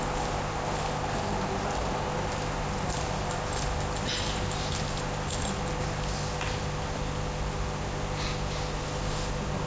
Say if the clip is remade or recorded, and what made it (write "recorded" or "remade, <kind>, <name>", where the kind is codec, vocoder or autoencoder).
recorded